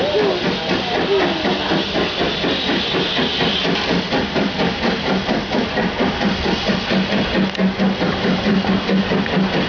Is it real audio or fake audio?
real